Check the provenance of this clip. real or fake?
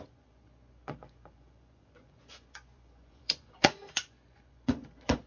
fake